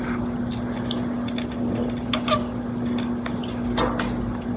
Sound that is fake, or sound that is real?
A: real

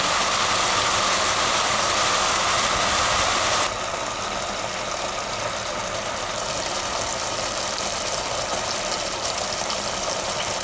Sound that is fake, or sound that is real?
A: fake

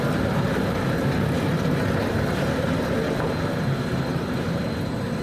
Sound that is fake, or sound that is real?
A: real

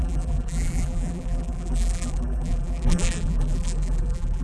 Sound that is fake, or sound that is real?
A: fake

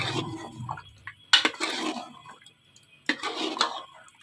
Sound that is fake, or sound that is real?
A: real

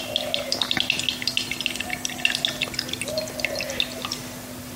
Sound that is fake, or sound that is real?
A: real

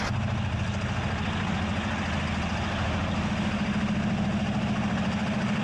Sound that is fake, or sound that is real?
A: real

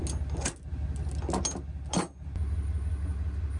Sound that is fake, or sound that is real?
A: real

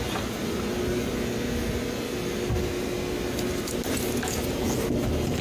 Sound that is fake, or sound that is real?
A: real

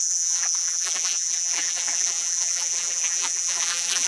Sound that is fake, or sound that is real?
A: fake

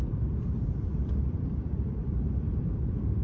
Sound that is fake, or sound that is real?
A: fake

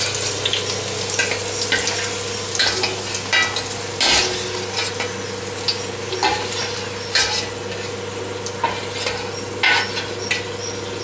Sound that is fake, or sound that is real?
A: real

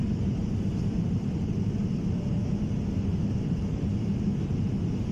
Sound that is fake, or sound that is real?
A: real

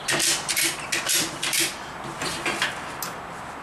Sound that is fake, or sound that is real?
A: real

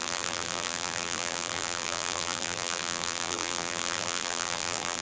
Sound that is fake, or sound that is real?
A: fake